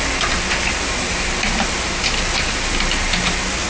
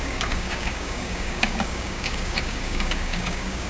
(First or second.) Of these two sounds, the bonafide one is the first